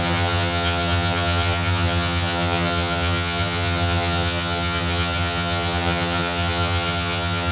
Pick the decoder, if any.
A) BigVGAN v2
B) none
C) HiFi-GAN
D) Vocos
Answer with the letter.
C